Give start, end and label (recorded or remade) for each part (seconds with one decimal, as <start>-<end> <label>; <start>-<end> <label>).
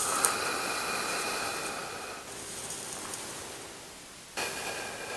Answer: 0.0-5.2 recorded